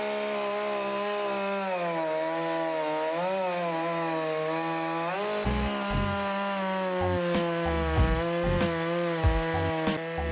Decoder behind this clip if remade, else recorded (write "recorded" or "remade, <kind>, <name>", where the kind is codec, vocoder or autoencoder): recorded